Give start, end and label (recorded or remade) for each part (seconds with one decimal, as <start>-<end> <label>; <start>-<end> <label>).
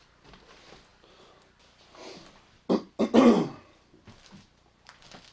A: 0.0-5.3 recorded